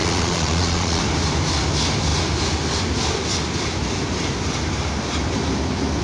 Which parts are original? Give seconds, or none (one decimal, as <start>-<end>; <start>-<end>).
1.0-6.0